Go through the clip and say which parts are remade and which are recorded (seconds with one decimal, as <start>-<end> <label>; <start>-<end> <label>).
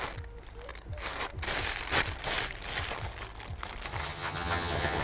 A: 0.0-4.0 recorded; 4.0-5.0 remade